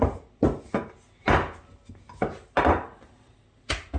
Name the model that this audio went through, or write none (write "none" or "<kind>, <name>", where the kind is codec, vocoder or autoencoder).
none